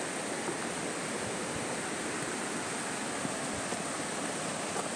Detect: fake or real real